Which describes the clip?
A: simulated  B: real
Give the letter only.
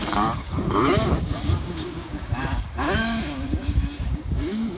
A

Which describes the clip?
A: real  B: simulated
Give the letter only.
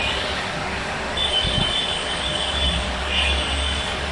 B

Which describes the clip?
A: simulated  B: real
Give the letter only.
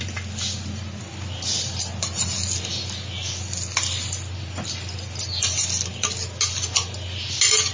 B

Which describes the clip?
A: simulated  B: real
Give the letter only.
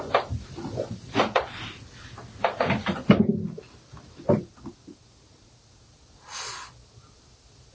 B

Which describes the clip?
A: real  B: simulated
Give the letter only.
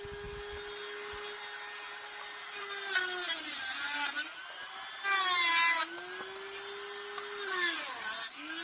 A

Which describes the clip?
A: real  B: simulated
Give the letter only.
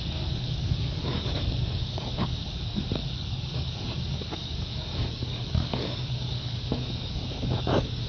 B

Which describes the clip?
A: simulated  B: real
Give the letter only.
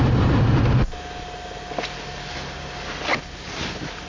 B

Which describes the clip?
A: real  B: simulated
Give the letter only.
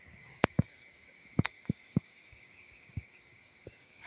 B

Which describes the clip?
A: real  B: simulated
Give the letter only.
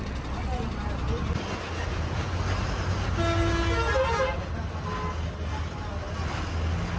A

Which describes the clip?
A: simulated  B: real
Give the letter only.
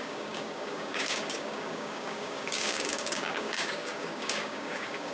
A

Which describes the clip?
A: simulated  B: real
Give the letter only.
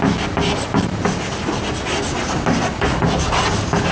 B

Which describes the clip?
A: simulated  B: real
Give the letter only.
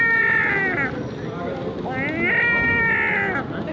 B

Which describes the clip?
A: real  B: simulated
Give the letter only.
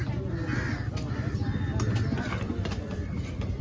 A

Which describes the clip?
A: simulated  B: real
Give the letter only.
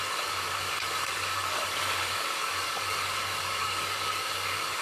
A